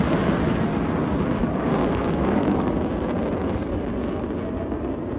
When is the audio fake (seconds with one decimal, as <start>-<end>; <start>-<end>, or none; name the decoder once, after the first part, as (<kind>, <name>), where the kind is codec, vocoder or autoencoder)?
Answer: 1.4-2.7 (codec, DAC); 3.4-3.9